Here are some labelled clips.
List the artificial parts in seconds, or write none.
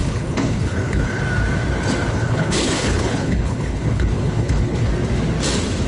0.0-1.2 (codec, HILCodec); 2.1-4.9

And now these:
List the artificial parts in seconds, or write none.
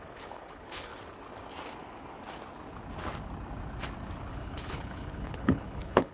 0.0-0.9 (codec, HILCodec); 4.3-6.1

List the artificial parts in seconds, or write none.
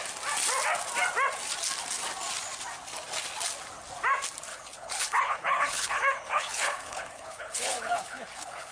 4.5-8.7 (codec, HILCodec)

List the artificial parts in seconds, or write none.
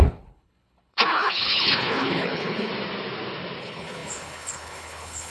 0.0-2.7 (codec, HILCodec); 3.6-5.3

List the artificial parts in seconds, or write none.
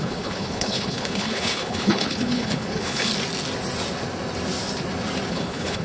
0.0-3.1 (codec, HILCodec); 5.3-5.8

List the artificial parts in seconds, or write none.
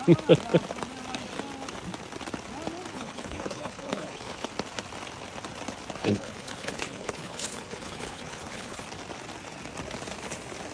2.9-4.5 (codec, HILCodec); 6.0-8.8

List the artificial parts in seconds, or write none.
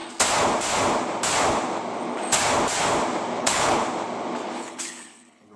3.4-3.8 (codec, HILCodec); 4.6-5.6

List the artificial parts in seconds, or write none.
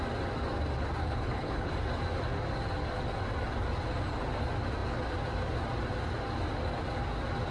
1.0-1.7 (codec, HILCodec)